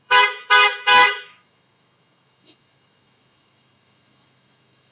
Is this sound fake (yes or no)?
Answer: yes